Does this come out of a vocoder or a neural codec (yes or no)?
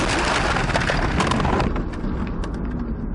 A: no